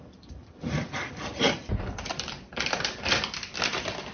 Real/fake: fake